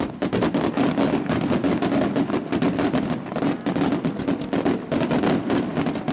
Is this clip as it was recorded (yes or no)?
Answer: yes